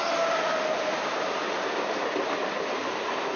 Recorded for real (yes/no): yes